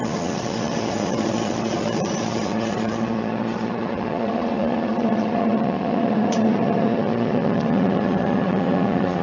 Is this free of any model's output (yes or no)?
no